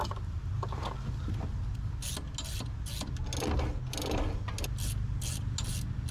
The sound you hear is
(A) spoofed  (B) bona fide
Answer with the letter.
B